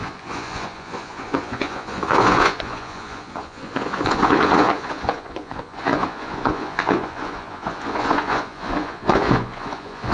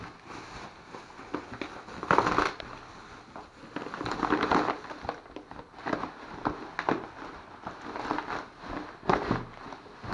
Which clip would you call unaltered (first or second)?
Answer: second